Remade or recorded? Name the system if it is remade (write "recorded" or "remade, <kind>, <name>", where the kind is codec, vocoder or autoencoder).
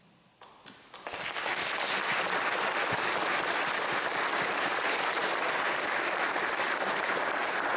recorded